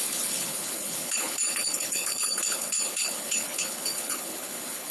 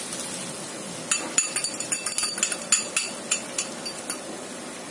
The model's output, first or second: first